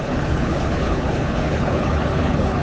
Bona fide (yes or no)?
no